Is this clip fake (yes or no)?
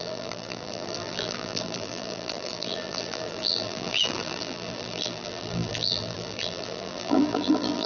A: yes